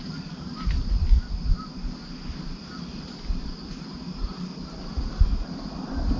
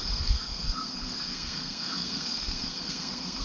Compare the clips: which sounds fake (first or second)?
second